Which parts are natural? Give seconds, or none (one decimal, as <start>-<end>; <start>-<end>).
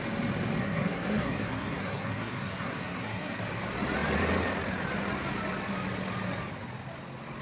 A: 0.0-0.6; 3.4-7.4